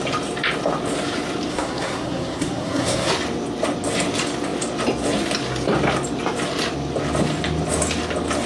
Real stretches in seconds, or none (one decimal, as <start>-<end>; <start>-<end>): 0.0-1.5; 3.1-8.5